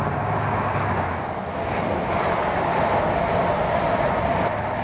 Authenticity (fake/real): real